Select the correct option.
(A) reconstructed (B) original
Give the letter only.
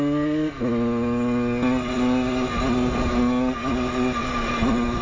B